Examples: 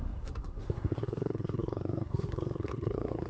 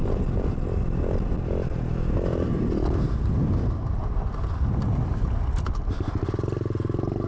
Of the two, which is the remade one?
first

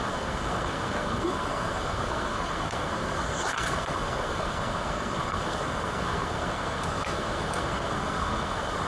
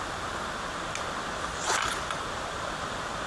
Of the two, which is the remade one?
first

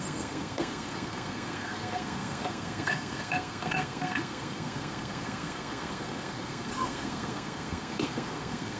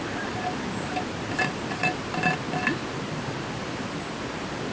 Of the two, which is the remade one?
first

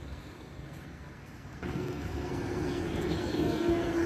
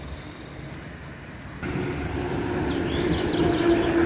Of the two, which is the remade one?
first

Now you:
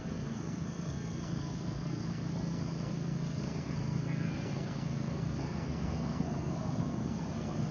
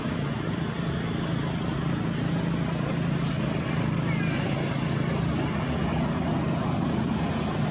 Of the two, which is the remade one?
first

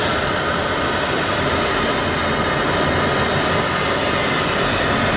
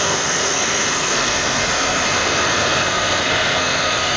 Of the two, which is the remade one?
second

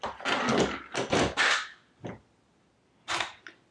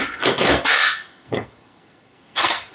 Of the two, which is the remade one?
second